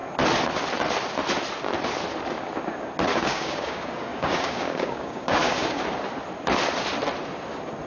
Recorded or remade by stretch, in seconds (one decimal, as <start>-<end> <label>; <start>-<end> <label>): 0.0-3.1 recorded; 3.1-5.8 remade; 5.8-7.9 recorded